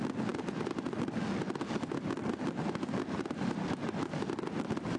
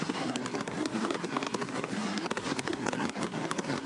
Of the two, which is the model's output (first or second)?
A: second